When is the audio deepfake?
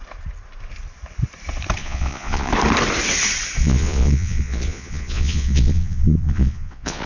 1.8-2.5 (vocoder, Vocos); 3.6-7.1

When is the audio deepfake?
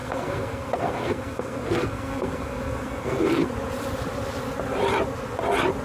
0.0-3.5 (codec, SNAC)